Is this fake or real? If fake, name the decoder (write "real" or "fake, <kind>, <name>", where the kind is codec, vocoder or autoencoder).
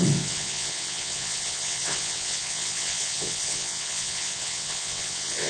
fake, vocoder, WaveNeXt